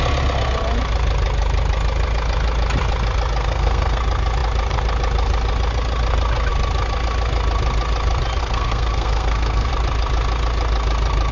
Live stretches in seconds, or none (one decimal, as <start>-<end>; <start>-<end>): 0.0-3.4; 4.0-8.4; 9.7-11.3